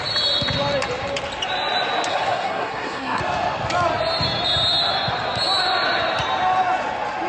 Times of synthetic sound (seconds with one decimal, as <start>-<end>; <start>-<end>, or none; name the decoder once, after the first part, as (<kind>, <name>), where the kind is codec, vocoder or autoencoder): 2.1-3.2 (codec, SNAC)

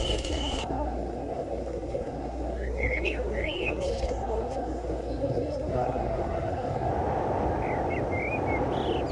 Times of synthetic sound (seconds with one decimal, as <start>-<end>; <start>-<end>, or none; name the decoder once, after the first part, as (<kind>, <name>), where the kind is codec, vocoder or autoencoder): 0.0-6.9 (codec, SNAC)

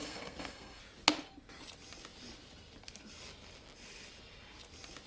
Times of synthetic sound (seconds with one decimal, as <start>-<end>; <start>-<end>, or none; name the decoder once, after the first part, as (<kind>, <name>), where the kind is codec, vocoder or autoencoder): 0.0-0.8 (codec, SNAC)